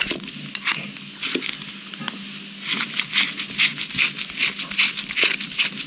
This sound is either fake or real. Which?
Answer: real